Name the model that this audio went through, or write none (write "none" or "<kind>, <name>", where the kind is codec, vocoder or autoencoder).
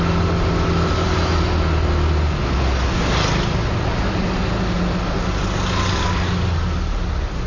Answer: none